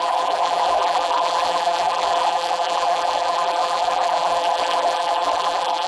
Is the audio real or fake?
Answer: fake